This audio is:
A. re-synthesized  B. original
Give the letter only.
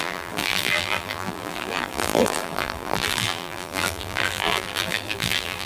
A